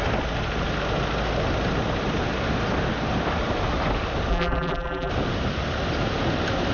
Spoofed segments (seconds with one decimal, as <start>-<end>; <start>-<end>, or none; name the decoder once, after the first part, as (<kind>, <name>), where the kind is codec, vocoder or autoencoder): 4.3-5.1 (vocoder, BigVGAN v2)